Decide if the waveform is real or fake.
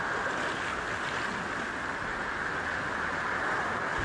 real